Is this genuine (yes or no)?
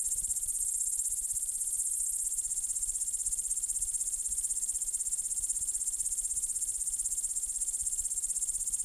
yes